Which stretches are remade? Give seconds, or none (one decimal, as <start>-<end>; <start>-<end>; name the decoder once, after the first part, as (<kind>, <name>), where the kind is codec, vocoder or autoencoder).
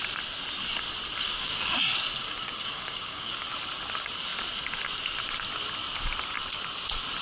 1.2-1.8 (codec, DAC); 2.2-3.3